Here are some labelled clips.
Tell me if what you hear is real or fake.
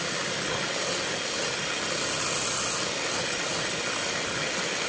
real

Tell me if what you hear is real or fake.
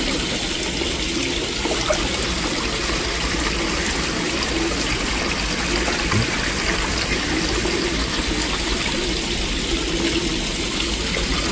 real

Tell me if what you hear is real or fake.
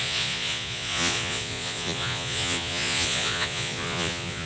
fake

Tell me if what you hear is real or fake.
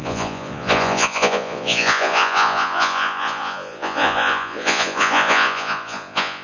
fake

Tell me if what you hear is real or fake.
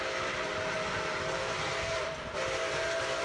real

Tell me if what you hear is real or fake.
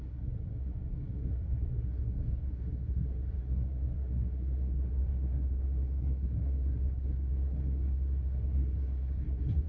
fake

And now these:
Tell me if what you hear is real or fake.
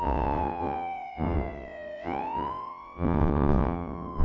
fake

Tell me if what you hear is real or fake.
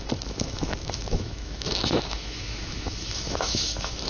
fake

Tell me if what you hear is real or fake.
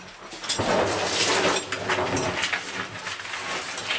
real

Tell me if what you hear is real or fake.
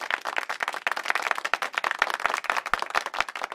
real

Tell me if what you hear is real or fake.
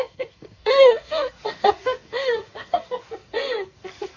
fake